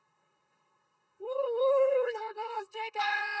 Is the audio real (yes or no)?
no